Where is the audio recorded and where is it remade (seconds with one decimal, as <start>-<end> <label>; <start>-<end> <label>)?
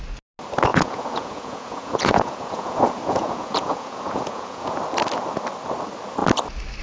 0.0-0.7 recorded; 0.7-4.8 remade; 4.8-6.8 recorded